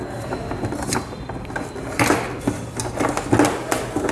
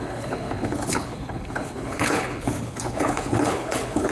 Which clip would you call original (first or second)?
first